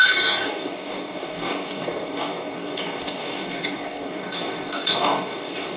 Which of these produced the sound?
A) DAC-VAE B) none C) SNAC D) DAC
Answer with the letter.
D